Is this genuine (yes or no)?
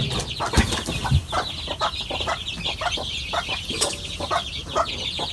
yes